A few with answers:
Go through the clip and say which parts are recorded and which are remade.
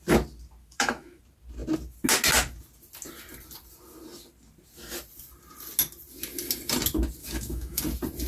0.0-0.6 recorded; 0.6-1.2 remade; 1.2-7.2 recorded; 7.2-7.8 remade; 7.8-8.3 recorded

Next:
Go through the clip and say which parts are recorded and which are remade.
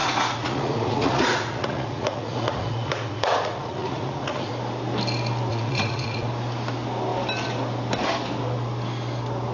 0.0-4.5 remade; 4.5-5.5 recorded; 5.5-6.3 remade; 6.3-9.5 recorded